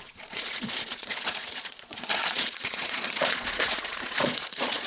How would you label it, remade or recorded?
remade